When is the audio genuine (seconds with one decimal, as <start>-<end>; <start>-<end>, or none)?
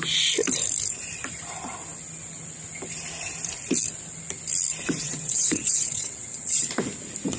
0.0-5.0; 6.7-7.4